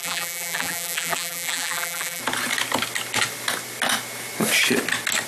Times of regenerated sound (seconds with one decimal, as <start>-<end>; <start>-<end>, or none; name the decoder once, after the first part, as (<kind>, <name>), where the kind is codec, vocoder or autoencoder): 0.0-2.2 (vocoder, BigVGAN v2)